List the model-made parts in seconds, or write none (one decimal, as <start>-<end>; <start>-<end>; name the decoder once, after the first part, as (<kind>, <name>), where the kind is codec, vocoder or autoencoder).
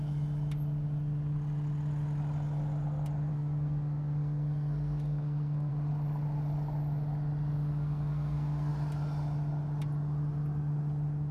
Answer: 3.3-5.7 (codec, SNAC); 7.7-8.7